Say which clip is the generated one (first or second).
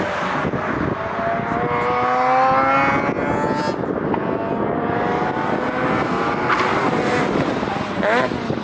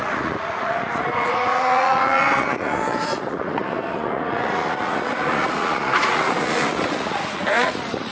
second